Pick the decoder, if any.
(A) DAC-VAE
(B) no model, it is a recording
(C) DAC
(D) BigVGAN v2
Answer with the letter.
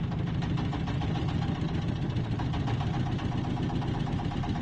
B